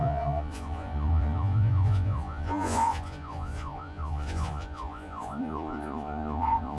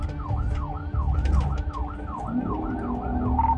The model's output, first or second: first